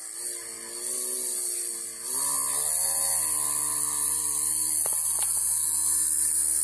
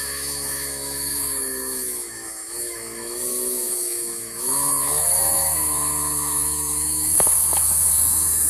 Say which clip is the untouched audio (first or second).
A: first